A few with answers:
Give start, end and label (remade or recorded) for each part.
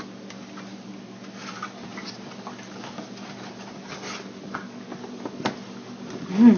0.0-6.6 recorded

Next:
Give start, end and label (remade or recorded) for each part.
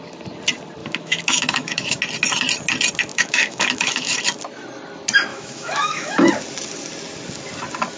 0.0-0.8 recorded; 0.8-2.0 remade; 2.0-3.1 recorded; 3.1-4.2 remade; 4.2-5.3 recorded; 5.3-6.3 remade; 6.3-8.0 recorded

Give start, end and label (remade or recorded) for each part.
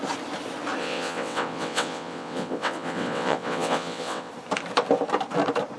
0.0-0.8 recorded; 0.8-4.3 remade; 4.3-5.8 recorded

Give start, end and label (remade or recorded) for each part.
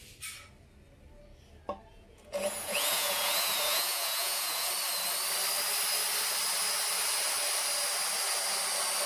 0.0-1.9 recorded; 1.9-4.7 remade; 4.7-9.1 recorded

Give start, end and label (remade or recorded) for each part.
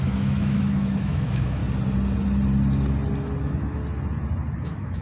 0.0-1.6 remade; 1.6-3.4 recorded; 3.4-3.8 remade; 3.8-4.6 recorded; 4.6-5.0 remade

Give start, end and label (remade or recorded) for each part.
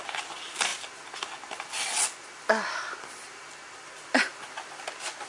0.0-5.3 recorded